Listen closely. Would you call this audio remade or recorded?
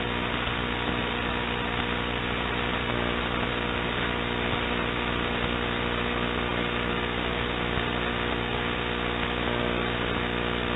recorded